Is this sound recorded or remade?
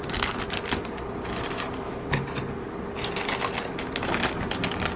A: recorded